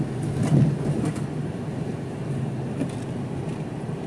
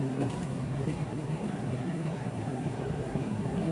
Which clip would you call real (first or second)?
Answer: first